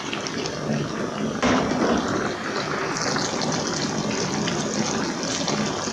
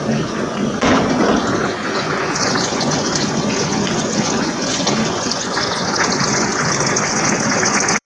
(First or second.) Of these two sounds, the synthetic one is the second